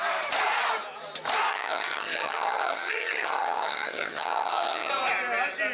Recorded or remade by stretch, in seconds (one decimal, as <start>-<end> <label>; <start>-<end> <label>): 0.0-1.5 recorded; 1.5-4.9 remade; 4.9-5.7 recorded